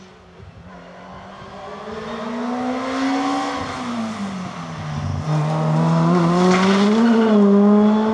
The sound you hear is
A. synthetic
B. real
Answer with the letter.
B